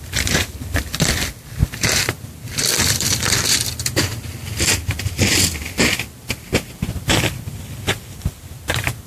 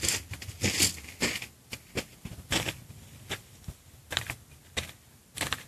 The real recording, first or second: second